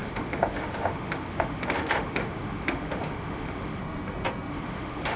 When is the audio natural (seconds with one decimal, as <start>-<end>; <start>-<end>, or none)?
3.8-4.5

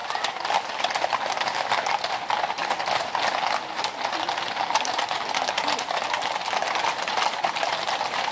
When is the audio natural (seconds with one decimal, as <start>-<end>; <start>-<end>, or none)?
0.0-8.3